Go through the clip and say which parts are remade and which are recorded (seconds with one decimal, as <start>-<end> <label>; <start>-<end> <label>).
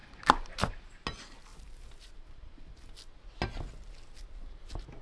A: 0.0-0.9 remade; 0.9-1.5 recorded; 1.5-2.9 remade; 2.9-5.0 recorded